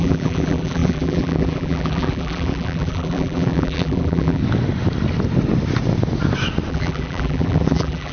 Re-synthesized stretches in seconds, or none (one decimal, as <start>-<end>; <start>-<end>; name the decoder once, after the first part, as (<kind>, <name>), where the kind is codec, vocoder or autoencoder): 0.0-4.4 (vocoder, BigVGAN v2); 6.7-8.1